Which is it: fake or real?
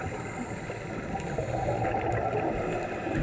real